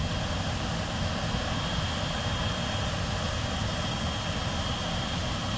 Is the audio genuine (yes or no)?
yes